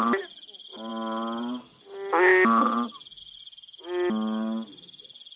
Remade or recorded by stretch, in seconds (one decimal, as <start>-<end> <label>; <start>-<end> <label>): 0.0-5.4 recorded